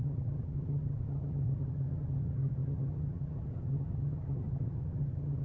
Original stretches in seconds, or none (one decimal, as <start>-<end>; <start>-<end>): none